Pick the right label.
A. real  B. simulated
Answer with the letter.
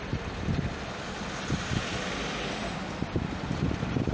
A